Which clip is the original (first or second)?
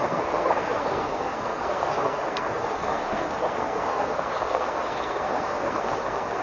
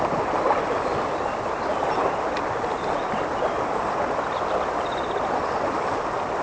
second